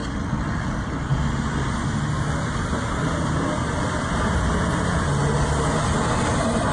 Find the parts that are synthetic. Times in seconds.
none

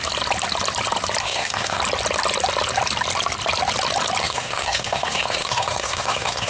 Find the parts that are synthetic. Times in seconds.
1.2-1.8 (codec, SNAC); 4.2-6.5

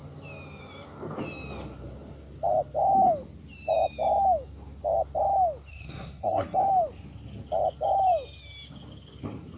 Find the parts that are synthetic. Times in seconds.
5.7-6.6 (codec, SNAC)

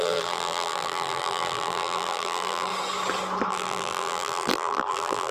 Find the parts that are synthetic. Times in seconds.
0.0-2.7 (vocoder, BigVGAN v2); 3.5-5.3